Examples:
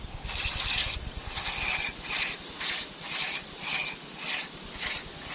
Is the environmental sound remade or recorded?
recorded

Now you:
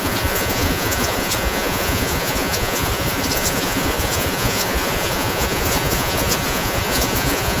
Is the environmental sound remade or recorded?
remade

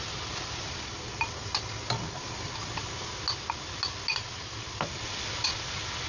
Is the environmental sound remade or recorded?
recorded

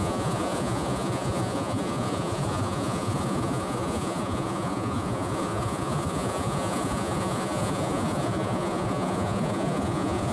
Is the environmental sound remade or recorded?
remade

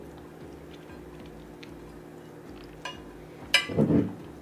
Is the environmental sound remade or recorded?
recorded